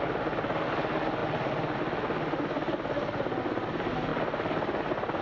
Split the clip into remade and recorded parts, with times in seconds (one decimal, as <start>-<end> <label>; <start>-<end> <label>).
0.0-5.2 recorded